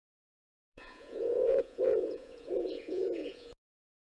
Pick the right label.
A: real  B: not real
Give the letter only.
B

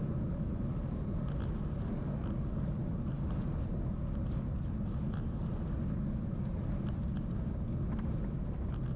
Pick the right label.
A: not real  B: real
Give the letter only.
B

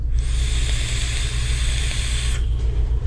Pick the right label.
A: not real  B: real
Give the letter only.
B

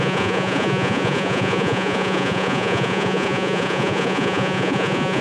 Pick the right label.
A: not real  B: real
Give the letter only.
A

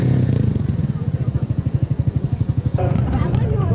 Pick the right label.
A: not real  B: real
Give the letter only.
A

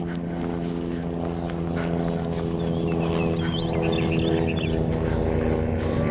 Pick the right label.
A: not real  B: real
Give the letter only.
B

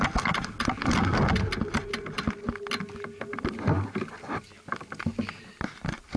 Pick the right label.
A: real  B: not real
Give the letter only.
A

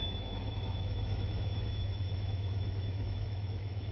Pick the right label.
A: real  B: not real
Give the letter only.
B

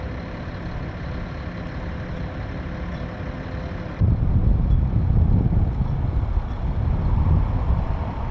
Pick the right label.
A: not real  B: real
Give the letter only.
B